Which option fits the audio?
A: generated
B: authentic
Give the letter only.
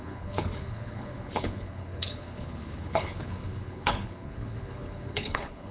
A